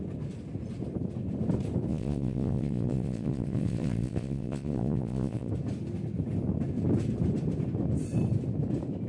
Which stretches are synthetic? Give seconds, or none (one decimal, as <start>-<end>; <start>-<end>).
1.9-5.5